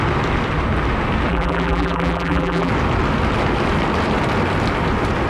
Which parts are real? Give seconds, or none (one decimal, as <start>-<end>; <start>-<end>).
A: 0.0-1.3; 2.7-5.3